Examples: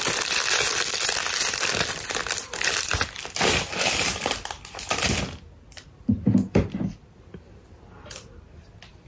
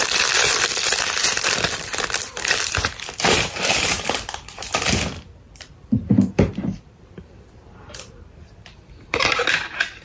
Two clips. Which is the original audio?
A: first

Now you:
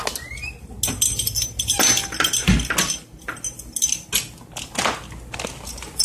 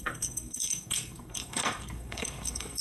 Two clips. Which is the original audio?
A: first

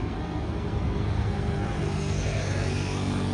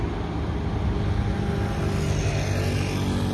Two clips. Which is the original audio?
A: second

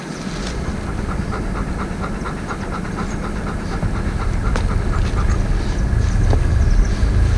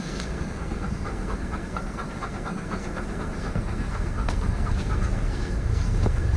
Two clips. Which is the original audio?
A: first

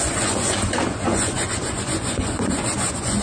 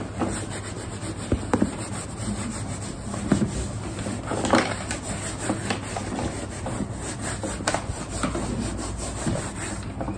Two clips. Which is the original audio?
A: second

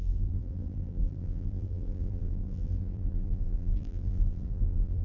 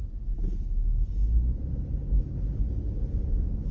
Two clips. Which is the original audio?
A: second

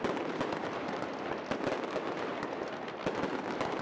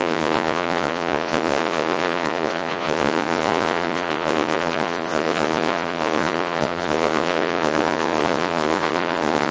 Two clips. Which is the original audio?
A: first